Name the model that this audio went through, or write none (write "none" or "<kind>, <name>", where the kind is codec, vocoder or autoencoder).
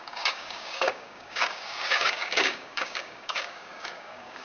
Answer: codec, DAC